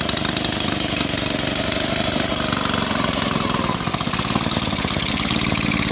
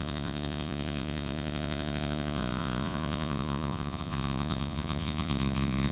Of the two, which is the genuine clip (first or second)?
first